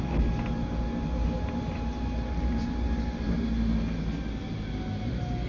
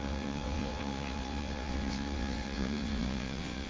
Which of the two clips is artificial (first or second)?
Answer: second